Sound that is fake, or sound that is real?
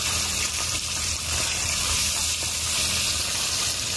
fake